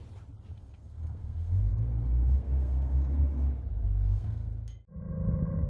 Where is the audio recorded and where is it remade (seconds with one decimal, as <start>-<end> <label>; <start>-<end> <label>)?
0.0-0.5 recorded; 0.5-3.2 remade; 3.2-3.8 recorded; 3.8-4.5 remade; 4.5-5.7 recorded